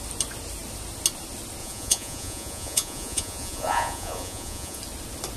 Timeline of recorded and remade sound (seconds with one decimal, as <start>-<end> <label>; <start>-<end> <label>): 0.0-1.6 recorded; 1.6-4.8 remade; 4.8-5.4 recorded